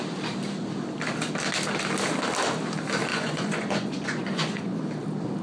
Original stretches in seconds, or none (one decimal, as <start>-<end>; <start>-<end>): 0.0-3.1; 4.8-5.4